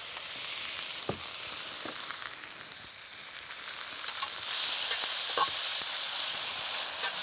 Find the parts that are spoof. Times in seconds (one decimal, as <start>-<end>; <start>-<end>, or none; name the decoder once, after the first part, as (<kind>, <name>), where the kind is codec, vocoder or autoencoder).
5.7-6.8 (vocoder, Vocos)